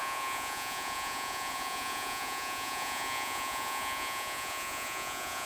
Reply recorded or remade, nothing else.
remade